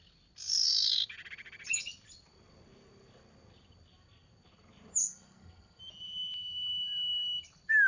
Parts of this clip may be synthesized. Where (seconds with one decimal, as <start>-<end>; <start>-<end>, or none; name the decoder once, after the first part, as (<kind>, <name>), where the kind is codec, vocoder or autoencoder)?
5.0-5.8 (codec, SNAC)